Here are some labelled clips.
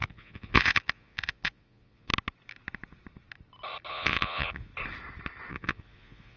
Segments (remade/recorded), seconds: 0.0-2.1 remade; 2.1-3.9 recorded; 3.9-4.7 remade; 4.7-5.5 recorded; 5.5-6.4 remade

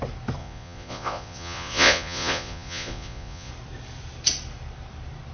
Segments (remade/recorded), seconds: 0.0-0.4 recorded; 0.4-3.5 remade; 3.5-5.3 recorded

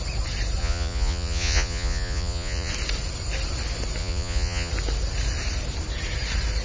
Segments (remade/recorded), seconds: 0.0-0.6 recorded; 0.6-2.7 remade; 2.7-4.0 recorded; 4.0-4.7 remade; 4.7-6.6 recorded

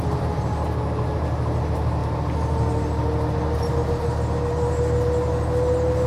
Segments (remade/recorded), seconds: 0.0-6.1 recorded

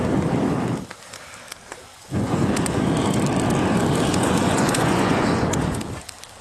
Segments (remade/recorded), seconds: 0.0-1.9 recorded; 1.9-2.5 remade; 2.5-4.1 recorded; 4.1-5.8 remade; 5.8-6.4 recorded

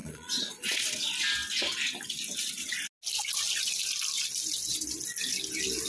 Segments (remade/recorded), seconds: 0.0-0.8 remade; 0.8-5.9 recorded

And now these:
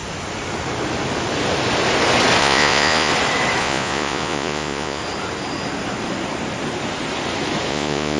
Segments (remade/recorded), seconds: 0.0-2.4 recorded; 2.4-3.1 remade; 3.1-3.6 recorded; 3.6-5.0 remade; 5.0-7.7 recorded; 7.7-8.2 remade

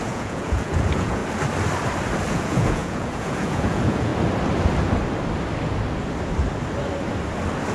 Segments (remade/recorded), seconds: 0.0-1.2 remade; 1.2-2.3 recorded; 2.3-4.1 remade; 4.1-7.7 recorded